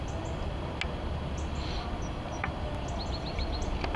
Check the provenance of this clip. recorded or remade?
recorded